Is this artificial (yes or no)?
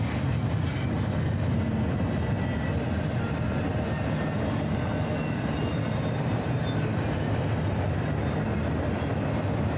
no